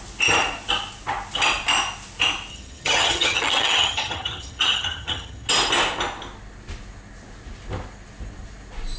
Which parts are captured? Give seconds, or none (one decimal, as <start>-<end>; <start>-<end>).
0.0-2.5; 5.5-9.0